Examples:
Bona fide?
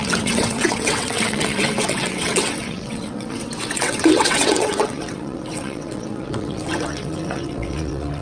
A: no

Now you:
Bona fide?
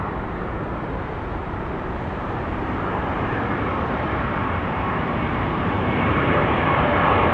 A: no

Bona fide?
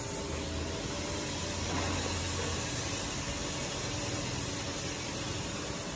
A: yes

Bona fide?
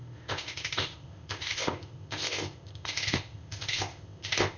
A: no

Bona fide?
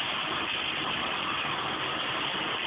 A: yes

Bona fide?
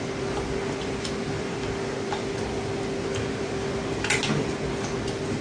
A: yes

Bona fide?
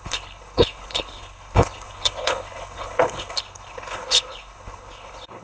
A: no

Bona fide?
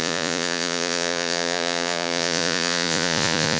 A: no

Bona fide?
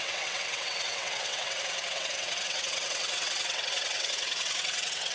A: no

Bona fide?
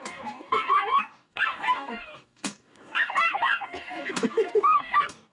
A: no